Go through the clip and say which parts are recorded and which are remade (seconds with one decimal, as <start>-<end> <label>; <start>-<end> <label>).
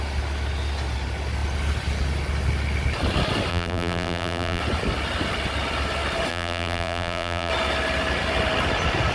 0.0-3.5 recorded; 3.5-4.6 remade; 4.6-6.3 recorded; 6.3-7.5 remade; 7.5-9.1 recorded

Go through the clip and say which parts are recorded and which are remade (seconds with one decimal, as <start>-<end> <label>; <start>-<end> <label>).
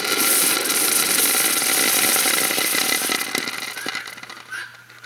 0.0-5.1 recorded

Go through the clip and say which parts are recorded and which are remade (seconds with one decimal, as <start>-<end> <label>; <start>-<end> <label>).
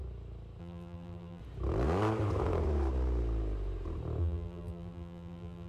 0.0-0.6 recorded; 0.6-1.4 remade; 1.4-4.2 recorded; 4.2-5.7 remade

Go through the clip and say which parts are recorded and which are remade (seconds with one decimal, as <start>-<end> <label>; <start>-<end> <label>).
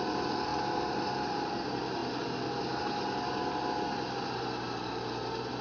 0.0-0.5 recorded; 0.5-1.5 remade; 1.5-5.6 recorded